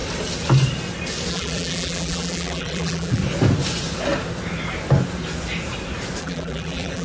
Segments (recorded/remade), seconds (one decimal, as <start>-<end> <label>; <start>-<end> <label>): 0.0-1.3 recorded; 1.3-3.2 remade; 3.2-6.2 recorded; 6.2-7.0 remade